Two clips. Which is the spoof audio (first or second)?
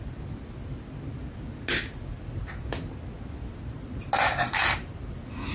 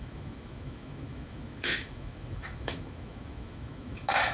second